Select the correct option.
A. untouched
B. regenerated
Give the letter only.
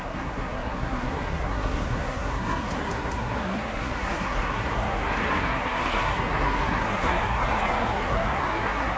B